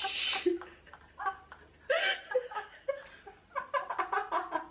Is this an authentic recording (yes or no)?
yes